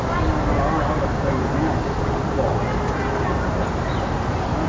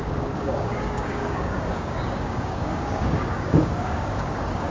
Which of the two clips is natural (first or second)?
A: first